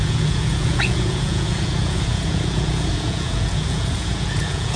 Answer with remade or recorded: remade